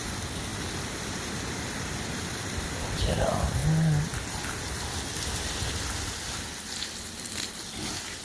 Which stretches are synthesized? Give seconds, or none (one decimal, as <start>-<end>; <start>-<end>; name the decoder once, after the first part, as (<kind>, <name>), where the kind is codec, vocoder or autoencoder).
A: 0.0-0.5 (vocoder, BigVGAN v2); 2.0-3.6; 6.0-8.2